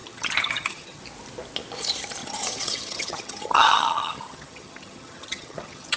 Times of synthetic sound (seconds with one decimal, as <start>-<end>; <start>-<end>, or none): 0.0-1.0; 2.2-6.0